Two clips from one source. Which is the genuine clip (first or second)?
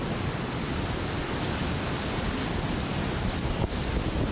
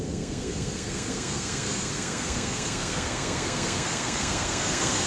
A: first